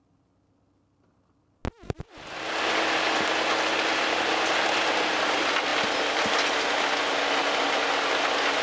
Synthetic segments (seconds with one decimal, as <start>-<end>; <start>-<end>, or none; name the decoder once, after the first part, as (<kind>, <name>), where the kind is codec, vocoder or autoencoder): none